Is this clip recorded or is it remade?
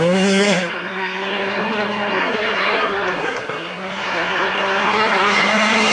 remade